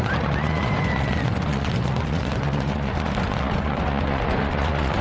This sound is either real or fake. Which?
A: fake